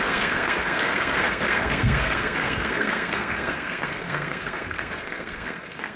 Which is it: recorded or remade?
remade